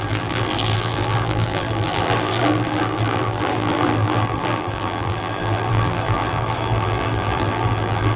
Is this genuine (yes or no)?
no